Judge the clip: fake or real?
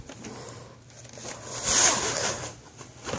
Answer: real